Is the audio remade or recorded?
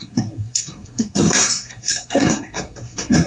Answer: remade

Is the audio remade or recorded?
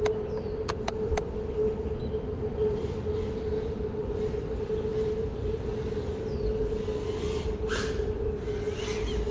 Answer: recorded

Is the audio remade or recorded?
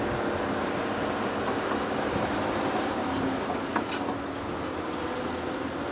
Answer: recorded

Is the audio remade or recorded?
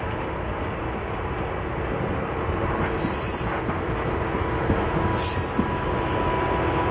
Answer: recorded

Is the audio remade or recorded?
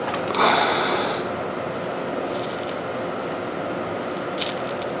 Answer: recorded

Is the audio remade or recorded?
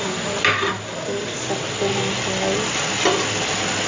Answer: recorded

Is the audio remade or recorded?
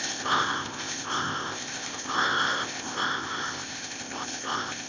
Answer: remade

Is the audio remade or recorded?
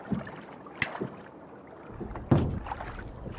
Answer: recorded